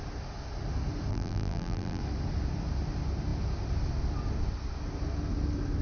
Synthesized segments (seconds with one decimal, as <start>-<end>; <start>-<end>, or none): 1.1-2.0